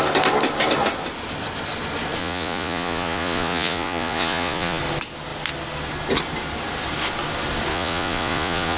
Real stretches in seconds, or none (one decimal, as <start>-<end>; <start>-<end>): 0.0-2.2; 4.8-7.7